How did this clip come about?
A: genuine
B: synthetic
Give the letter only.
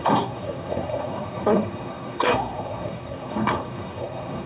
B